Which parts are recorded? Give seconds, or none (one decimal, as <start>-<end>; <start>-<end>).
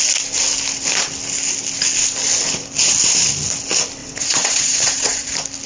0.0-4.0; 5.3-5.7